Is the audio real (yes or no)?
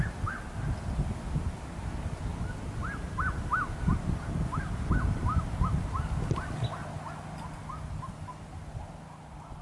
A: yes